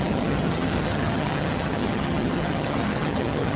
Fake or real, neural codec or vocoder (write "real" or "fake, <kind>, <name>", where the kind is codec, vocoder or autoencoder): fake, vocoder, HiFi-GAN